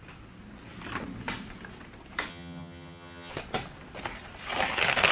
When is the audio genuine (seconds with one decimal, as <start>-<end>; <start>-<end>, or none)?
0.0-2.3; 3.3-5.1